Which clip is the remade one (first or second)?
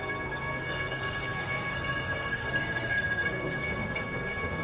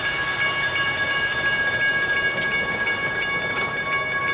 first